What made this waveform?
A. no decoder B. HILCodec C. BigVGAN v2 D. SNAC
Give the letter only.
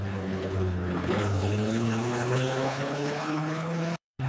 B